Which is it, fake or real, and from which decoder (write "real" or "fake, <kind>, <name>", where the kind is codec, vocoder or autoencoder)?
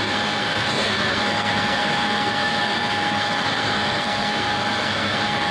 fake, codec, SNAC